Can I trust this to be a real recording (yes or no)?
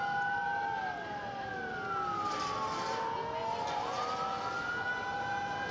yes